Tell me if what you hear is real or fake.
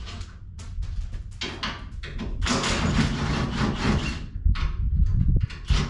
real